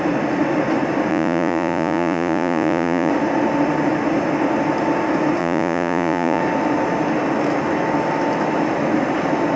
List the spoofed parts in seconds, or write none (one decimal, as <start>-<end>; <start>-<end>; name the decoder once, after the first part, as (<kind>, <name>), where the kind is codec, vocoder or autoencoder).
1.1-3.1 (vocoder, Vocos); 5.4-6.4